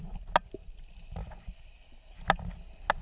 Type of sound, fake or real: real